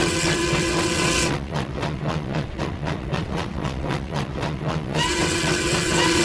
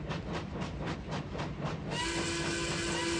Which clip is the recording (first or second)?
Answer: second